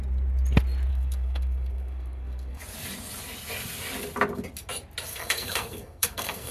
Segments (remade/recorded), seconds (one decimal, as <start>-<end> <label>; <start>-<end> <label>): 0.0-0.9 recorded; 0.9-2.6 remade; 2.6-5.1 recorded; 5.1-6.5 remade